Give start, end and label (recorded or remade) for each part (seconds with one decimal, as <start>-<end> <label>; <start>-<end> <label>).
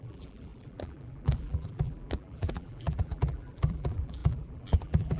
0.0-5.2 remade